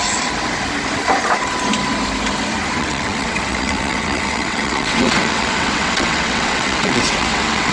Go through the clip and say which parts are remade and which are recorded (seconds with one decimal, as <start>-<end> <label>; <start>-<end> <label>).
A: 0.0-2.8 recorded; 2.8-7.7 remade